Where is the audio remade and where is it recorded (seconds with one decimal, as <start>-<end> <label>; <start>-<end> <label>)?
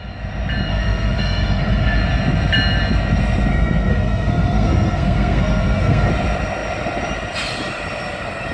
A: 0.0-0.7 recorded; 0.7-2.0 remade; 2.0-3.5 recorded; 3.5-6.1 remade; 6.1-8.5 recorded